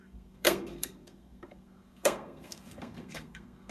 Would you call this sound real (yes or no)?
no